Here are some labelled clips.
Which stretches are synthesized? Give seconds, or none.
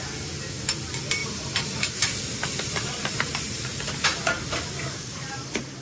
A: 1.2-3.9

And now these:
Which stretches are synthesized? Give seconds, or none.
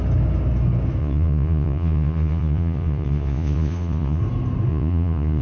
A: 1.0-4.2; 4.7-5.4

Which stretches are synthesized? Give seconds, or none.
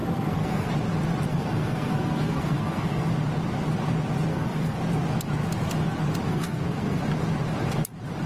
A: 0.0-0.7; 1.3-3.1; 4.3-4.8; 6.3-7.0